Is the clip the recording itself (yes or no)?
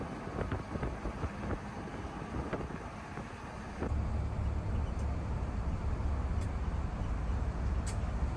yes